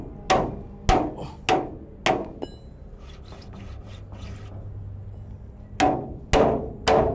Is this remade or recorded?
recorded